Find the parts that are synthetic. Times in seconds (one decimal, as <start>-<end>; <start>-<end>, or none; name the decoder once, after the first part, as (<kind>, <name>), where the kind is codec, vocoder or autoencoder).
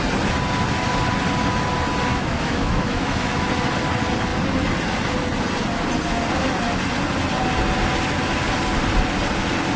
2.1-3.5 (autoencoder, DAC-VAE)